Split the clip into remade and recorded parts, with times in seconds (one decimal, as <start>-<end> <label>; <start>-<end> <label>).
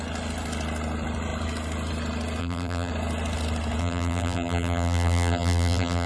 0.0-2.4 recorded; 2.4-2.9 remade; 2.9-3.8 recorded; 3.8-6.1 remade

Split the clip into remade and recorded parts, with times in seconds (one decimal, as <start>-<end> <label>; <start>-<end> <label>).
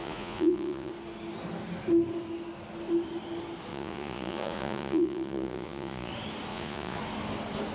0.0-0.9 remade; 0.9-3.7 recorded; 3.7-6.1 remade; 6.1-6.5 recorded; 6.5-7.0 remade; 7.0-7.7 recorded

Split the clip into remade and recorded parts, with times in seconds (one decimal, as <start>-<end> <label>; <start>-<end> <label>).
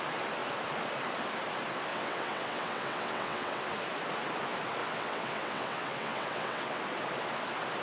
0.0-1.9 recorded; 1.9-3.6 remade; 3.6-4.8 recorded; 4.8-6.8 remade; 6.8-7.8 recorded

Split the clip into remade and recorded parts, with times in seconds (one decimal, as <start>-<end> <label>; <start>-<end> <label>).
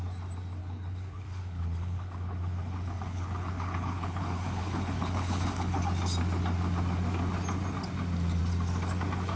0.0-0.6 recorded; 0.6-5.8 remade; 5.8-9.4 recorded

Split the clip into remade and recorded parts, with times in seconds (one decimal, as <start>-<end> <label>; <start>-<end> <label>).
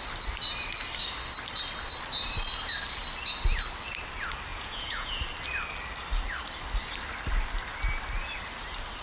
0.0-4.5 recorded; 4.5-5.1 remade; 5.1-9.0 recorded